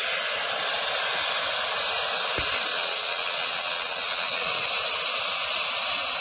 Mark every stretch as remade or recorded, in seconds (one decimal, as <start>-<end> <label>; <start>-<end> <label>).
0.0-2.7 recorded; 2.7-4.7 remade; 4.7-6.2 recorded